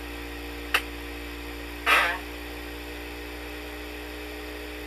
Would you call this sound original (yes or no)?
yes